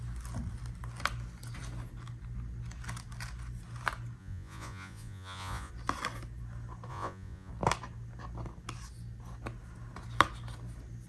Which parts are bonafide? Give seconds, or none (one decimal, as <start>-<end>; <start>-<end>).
0.0-4.2; 5.7-6.9; 7.5-11.1